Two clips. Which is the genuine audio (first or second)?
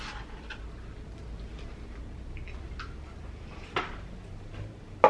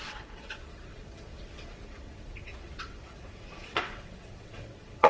first